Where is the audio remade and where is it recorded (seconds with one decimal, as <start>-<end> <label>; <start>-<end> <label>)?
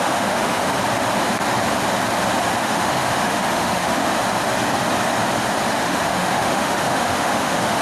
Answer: 0.0-0.5 remade; 0.5-2.6 recorded; 2.6-4.2 remade; 4.2-5.7 recorded; 5.7-7.8 remade